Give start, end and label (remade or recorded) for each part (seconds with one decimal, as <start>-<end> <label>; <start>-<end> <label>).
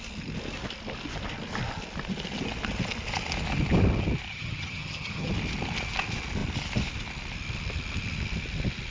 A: 0.0-4.3 recorded; 4.3-5.3 remade; 5.3-8.9 recorded